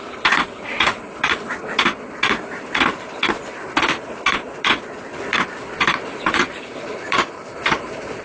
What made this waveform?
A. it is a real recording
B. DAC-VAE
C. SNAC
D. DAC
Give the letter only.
A